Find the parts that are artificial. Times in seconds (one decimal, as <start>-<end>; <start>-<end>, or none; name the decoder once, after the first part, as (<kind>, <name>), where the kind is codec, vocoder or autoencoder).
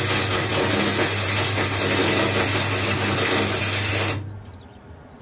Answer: none